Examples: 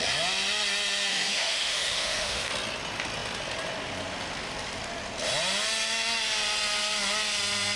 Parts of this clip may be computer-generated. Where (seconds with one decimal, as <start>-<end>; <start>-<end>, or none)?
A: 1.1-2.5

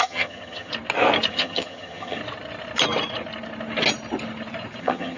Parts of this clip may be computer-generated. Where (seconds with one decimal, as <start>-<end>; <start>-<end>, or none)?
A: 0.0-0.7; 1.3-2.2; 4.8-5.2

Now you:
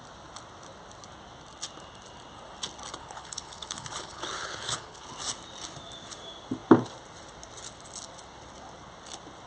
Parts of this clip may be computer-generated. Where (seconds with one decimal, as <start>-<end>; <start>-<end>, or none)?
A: 3.0-5.1

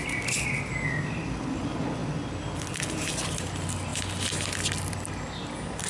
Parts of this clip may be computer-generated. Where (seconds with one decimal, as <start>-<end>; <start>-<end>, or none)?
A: none

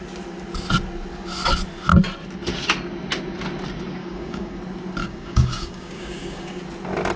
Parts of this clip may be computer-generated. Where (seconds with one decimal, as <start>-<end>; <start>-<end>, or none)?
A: 4.0-4.6; 5.0-6.6

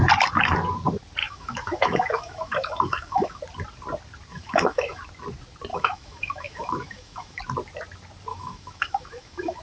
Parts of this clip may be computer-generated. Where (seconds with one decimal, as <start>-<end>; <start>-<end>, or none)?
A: 1.2-3.4; 4.3-5.0; 5.7-7.4; 8.3-9.6

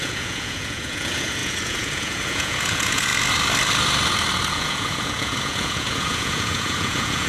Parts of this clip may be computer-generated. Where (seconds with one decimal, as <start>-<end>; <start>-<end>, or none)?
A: 0.0-3.1; 4.5-7.3